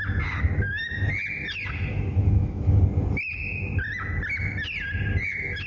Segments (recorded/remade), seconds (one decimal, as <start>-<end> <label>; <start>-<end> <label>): 0.0-1.9 recorded; 1.9-2.8 remade; 2.8-5.7 recorded